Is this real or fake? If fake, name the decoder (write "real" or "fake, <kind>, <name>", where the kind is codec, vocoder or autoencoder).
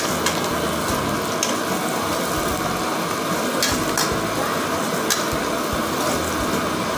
real